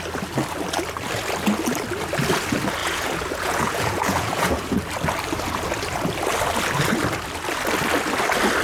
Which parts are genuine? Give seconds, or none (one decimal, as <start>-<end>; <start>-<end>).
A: 0.0-2.8; 4.8-8.6